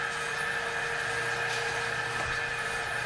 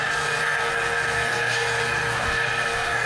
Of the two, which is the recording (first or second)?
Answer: first